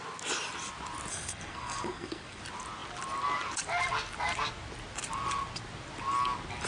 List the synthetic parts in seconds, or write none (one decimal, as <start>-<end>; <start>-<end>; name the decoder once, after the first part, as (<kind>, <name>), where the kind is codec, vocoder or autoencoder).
1.1-2.4 (codec, SNAC)